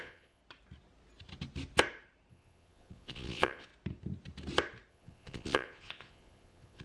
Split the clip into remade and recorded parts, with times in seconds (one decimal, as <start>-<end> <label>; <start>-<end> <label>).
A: 0.0-0.4 remade; 0.4-2.3 recorded; 2.3-3.7 remade; 3.7-4.9 recorded; 4.9-6.8 remade